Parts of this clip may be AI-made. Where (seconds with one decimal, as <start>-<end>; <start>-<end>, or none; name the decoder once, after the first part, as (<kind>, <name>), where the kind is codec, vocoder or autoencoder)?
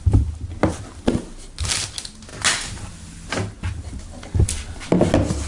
none